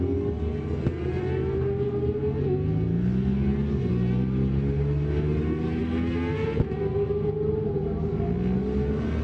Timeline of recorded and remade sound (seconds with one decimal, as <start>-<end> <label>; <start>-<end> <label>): 0.0-9.2 recorded

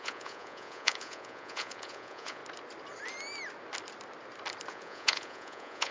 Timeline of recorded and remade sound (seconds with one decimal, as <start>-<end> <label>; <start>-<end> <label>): 0.0-2.4 remade; 2.4-4.7 recorded; 4.7-5.9 remade

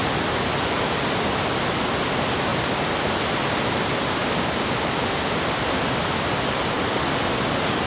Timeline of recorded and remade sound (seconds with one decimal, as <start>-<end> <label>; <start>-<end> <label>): 0.0-7.9 recorded

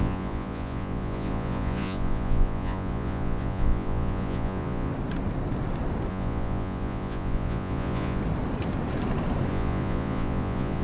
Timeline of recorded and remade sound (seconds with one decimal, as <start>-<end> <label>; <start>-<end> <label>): 0.0-4.9 remade; 4.9-6.1 recorded; 6.1-8.2 remade; 8.2-9.5 recorded; 9.5-10.8 remade

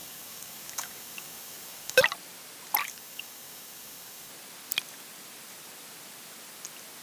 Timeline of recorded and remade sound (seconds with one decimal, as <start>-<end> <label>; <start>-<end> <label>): 0.0-2.0 remade; 2.0-2.8 recorded; 2.8-4.3 remade; 4.3-7.0 recorded